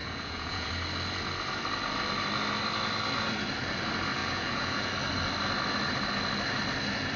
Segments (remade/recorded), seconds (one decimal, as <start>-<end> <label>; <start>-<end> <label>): 0.0-0.7 remade; 0.7-4.2 recorded; 4.2-4.9 remade; 4.9-7.2 recorded